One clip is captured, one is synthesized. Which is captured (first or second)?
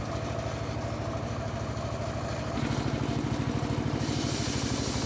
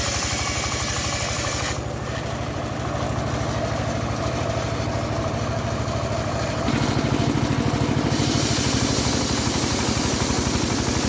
first